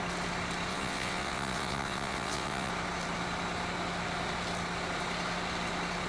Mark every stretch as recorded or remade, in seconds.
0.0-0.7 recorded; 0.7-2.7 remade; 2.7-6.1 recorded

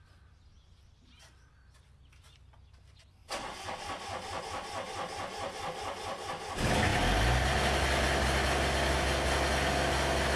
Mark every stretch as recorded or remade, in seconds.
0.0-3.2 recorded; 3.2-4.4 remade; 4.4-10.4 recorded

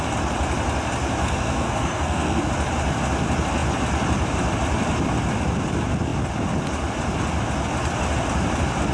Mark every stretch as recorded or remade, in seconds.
0.0-1.2 recorded; 1.2-2.5 remade; 2.5-8.9 recorded